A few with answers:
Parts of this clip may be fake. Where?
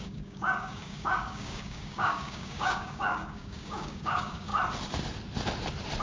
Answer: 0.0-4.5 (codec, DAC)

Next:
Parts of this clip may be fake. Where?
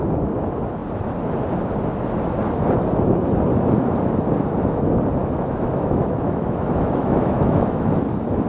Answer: 5.2-7.9 (autoencoder, DAC-VAE)